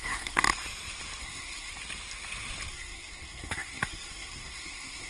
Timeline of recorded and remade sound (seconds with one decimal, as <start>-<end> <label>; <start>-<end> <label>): 0.0-0.4 remade; 0.4-1.2 recorded; 1.2-1.7 remade; 1.7-2.7 recorded; 2.7-5.1 remade

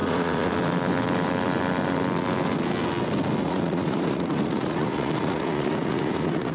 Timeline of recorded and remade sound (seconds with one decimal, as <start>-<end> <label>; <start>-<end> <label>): 0.0-0.5 remade; 0.5-3.4 recorded; 3.4-6.5 remade

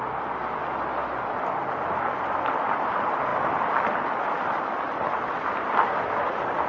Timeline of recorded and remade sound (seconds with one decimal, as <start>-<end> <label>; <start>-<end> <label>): 0.0-6.7 recorded

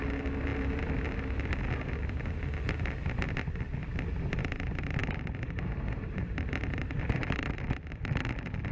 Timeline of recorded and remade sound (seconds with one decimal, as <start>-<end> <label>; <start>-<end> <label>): 0.0-5.0 recorded; 5.0-7.4 remade; 7.4-8.7 recorded